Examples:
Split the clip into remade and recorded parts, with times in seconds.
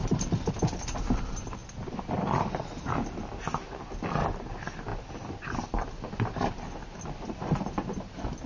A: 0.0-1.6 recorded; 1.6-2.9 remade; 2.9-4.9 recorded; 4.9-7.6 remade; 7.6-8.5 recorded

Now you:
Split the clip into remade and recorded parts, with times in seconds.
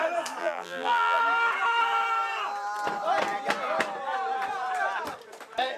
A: 0.0-0.4 recorded; 0.4-1.2 remade; 1.2-5.8 recorded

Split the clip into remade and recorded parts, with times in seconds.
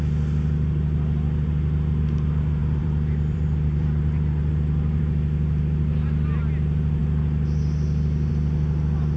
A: 0.0-2.6 recorded; 2.6-5.0 remade; 5.0-9.2 recorded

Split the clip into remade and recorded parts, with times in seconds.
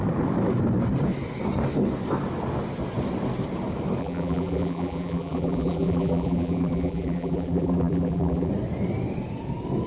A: 0.0-4.0 recorded; 4.0-8.5 remade; 8.5-9.9 recorded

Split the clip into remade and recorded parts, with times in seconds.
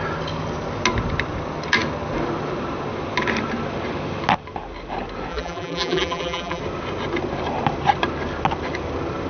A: 0.0-5.3 recorded; 5.3-6.6 remade; 6.6-9.3 recorded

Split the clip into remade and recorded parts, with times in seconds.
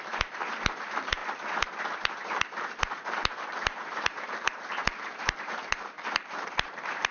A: 0.0-1.2 remade; 1.2-2.1 recorded; 2.1-7.1 remade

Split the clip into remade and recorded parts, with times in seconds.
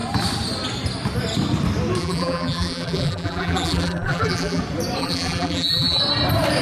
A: 0.0-2.0 recorded; 2.0-4.6 remade; 4.6-5.0 recorded; 5.0-6.0 remade; 6.0-6.6 recorded